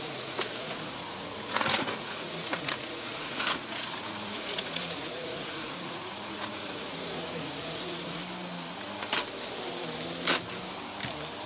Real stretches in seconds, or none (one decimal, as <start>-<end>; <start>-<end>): 8.2-11.5